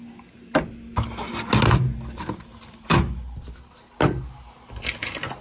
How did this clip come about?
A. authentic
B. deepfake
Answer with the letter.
A